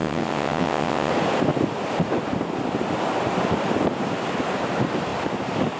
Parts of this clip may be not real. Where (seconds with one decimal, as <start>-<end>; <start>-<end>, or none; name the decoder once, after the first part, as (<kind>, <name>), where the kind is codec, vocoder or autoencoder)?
0.0-1.1 (vocoder, WaveNeXt)